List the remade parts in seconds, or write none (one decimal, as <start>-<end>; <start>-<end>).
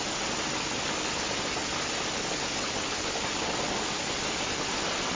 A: none